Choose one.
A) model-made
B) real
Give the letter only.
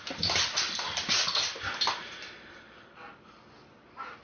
B